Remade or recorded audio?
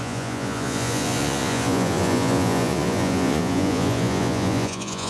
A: remade